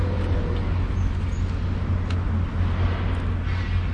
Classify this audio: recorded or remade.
recorded